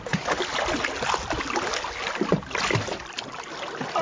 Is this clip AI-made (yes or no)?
no